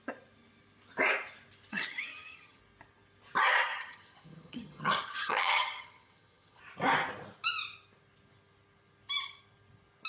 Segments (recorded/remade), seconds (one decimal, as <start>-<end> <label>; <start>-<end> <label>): 0.0-1.7 recorded; 1.7-2.6 remade; 2.6-3.7 recorded; 3.7-6.6 remade; 6.6-10.1 recorded